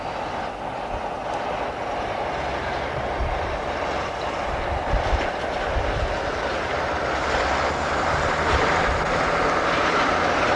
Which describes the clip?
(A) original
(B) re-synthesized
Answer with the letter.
A